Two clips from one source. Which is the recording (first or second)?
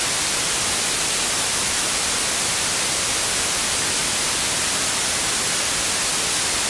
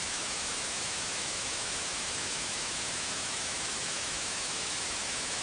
first